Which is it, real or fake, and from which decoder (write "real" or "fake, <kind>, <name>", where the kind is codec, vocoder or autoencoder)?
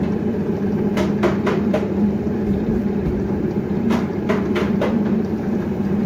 fake, vocoder, BigVGAN v2